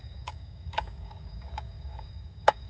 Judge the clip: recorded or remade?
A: remade